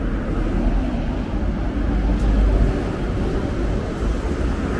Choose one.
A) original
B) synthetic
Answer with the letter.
A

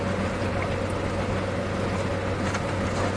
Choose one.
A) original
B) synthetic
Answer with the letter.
A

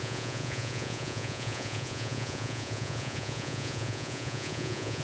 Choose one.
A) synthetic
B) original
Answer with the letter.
A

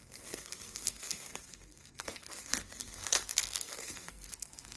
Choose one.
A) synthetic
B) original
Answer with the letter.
A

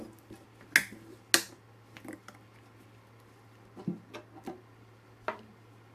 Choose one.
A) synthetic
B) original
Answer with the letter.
B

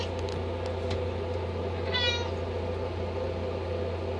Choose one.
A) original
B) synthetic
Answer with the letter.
A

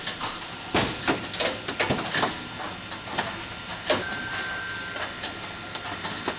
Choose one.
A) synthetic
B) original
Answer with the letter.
B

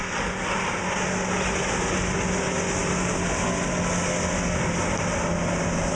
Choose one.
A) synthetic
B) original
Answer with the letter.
B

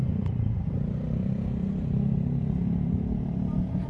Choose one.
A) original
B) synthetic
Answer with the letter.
B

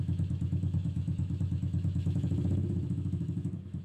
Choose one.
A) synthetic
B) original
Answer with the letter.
A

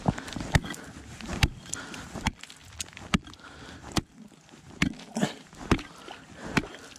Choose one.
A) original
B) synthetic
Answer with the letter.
A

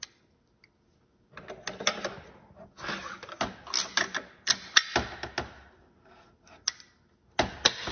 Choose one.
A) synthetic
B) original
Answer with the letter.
B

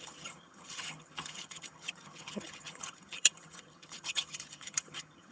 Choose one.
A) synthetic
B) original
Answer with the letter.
A